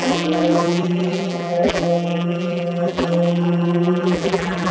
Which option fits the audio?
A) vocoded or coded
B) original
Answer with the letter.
A